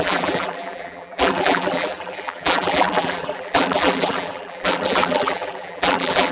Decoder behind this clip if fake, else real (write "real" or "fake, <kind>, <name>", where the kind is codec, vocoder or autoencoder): fake, vocoder, BigVGAN v2